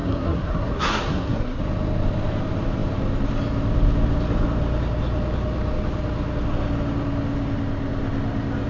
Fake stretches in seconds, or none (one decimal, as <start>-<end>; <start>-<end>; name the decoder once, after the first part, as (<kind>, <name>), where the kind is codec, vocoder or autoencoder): 0.0-1.6 (codec, SNAC)